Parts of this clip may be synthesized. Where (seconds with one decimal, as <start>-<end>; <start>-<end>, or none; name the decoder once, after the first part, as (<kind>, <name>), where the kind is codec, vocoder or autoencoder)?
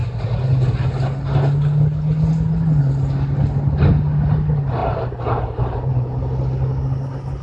4.8-6.1 (vocoder, BigVGAN v2)